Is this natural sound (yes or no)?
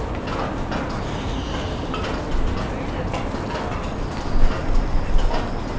yes